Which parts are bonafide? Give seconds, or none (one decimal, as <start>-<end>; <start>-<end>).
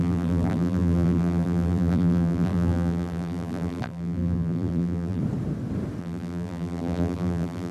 5.2-6.0